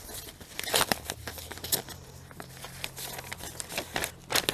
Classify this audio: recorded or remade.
recorded